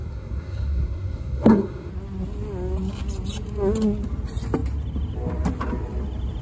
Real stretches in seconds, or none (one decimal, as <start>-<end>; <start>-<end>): 1.9-6.4